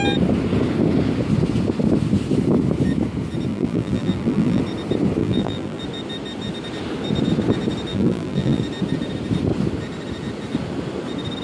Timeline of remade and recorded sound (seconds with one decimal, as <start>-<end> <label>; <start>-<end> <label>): 0.0-3.5 recorded; 3.5-4.6 remade; 4.6-5.2 recorded; 5.2-5.8 remade; 5.8-7.9 recorded; 7.9-8.6 remade; 8.6-11.4 recorded